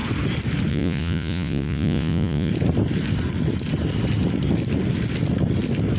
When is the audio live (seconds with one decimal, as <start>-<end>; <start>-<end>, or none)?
0.0-0.7; 2.5-6.0

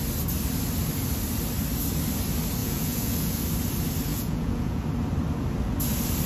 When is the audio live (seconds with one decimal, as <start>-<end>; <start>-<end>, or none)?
0.0-2.6; 3.4-4.1; 4.8-6.3

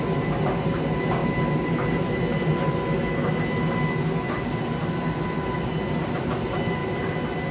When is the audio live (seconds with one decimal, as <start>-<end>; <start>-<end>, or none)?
0.0-7.5

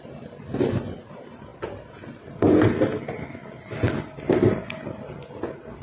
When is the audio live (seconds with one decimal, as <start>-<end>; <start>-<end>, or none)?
0.0-5.8